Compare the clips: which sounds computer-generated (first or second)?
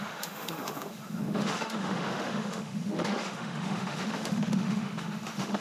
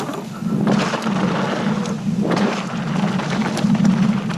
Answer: first